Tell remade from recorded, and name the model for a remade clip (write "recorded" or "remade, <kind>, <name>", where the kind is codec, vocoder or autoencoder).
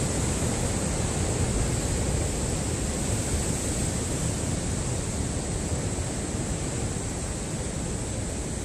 recorded